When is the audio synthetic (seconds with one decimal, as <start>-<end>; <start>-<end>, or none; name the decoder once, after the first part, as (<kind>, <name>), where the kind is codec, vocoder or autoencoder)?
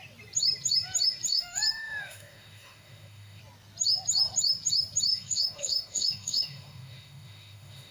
1.3-3.4 (autoencoder, DAC-VAE); 5.1-7.9